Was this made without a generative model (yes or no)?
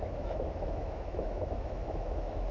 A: no